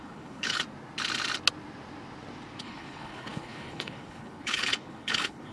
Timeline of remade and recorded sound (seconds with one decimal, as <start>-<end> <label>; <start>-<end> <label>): 0.0-0.6 remade; 0.6-2.6 recorded; 2.6-5.5 remade